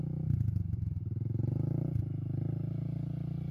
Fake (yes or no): no